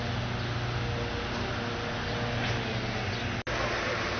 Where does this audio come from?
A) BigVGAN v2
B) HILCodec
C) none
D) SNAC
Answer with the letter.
C